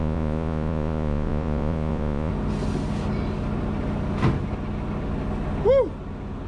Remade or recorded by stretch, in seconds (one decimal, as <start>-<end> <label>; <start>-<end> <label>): 0.0-2.3 remade; 2.3-6.5 recorded

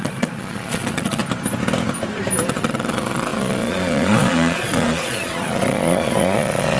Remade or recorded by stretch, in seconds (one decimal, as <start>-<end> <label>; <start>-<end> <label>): 0.0-1.2 remade; 1.2-2.5 recorded; 2.5-6.8 remade

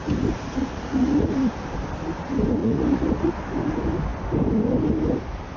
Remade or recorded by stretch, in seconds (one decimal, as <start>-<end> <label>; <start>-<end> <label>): 0.0-0.6 recorded; 0.6-1.3 remade; 1.3-2.6 recorded; 2.6-3.3 remade; 3.3-5.6 recorded

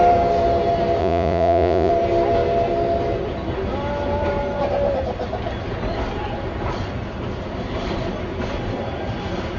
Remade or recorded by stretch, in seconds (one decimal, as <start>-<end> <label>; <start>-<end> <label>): 0.0-1.0 recorded; 1.0-1.9 remade; 1.9-9.6 recorded

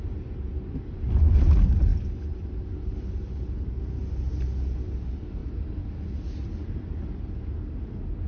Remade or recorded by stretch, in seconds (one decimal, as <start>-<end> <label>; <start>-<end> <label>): 0.0-8.3 recorded

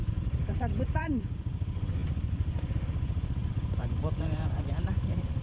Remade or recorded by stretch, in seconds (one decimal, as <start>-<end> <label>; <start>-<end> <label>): 0.0-5.4 remade